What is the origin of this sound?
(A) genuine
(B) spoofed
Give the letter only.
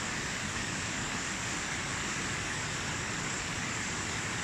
B